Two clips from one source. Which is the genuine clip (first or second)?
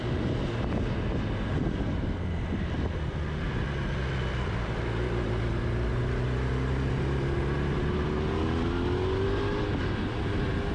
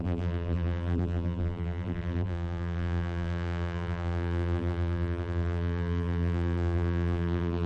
first